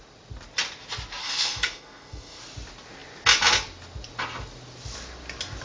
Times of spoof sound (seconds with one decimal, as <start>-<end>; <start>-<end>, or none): 1.2-2.4